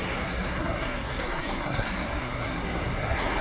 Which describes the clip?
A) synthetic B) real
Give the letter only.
A